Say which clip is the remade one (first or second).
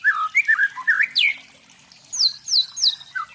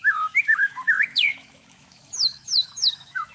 second